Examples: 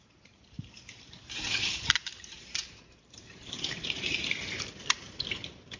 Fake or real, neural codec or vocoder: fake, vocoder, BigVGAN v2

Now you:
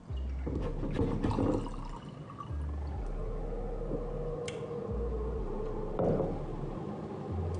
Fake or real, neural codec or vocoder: real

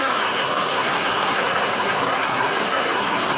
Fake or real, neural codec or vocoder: fake, codec, SNAC